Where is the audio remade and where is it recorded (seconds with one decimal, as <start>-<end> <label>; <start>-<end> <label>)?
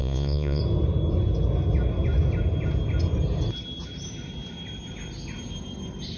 0.0-0.6 remade; 0.6-6.2 recorded